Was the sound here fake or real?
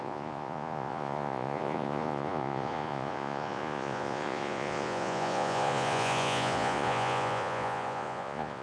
fake